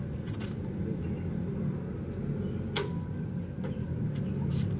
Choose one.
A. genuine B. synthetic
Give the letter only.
A